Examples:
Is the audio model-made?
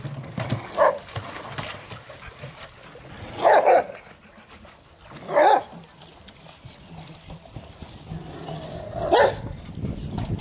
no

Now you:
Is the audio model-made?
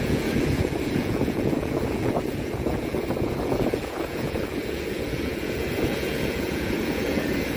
yes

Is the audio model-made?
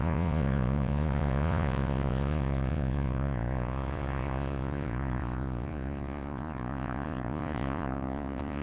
yes